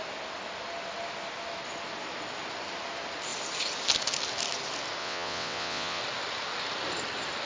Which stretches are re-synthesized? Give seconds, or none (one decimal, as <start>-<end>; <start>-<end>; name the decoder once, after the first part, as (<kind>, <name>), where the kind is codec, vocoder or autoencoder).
5.0-6.0 (vocoder, WaveNeXt)